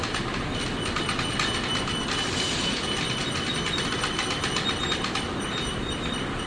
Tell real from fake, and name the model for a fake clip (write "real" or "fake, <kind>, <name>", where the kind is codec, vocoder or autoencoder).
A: real